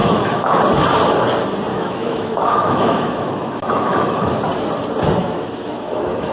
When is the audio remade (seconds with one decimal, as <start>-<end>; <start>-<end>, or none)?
0.0-0.6; 1.7-4.4; 5.2-6.3